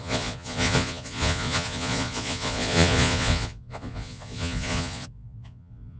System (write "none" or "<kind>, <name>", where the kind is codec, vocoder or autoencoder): vocoder, Vocos